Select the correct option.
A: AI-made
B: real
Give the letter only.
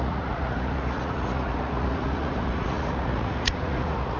A